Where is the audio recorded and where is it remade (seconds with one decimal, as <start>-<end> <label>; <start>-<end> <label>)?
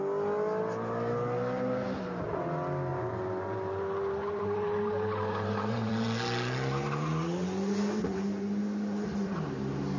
0.0-2.9 recorded; 2.9-5.9 remade; 5.9-10.0 recorded